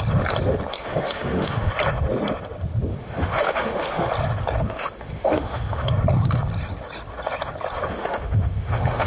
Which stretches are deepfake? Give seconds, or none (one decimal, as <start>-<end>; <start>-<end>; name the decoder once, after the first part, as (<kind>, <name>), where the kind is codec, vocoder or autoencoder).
0.7-1.7 (autoencoder, DAC-VAE); 2.9-4.1; 4.6-5.9; 7.9-9.1